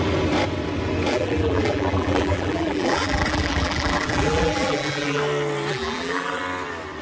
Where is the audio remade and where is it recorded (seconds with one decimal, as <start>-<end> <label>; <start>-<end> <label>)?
0.0-1.1 recorded; 1.1-5.2 remade; 5.2-5.7 recorded; 5.7-6.4 remade; 6.4-7.0 recorded